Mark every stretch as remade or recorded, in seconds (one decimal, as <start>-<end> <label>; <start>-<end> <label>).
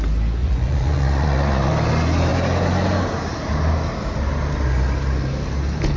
0.0-0.4 recorded; 0.4-1.7 remade; 1.7-6.0 recorded